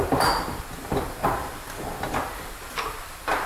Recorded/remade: remade